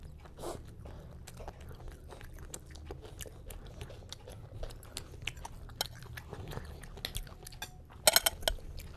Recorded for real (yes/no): yes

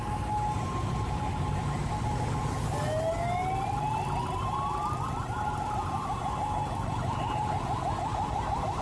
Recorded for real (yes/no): yes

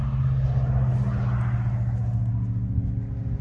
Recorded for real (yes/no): yes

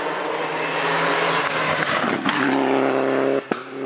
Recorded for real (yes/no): yes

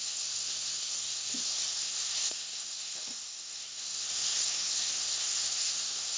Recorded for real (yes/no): no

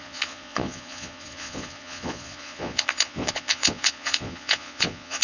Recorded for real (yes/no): no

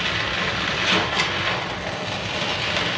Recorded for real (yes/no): yes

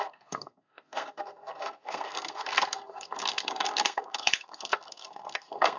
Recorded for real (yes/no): no